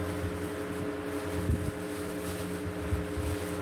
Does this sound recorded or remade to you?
recorded